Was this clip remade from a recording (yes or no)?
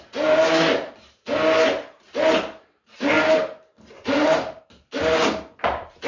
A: no